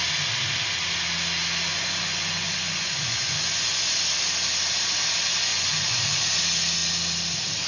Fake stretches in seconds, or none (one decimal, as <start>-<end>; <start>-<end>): 1.7-3.8; 5.5-6.0

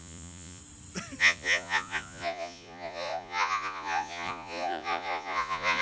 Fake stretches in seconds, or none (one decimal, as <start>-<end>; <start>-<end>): 0.0-0.6; 1.2-5.8

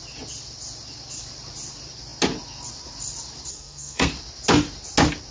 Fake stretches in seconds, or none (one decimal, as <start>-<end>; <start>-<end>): 3.5-4.1

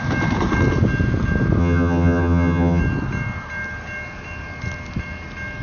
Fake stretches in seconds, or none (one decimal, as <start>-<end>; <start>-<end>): 1.6-2.8